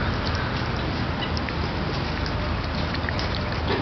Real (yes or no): yes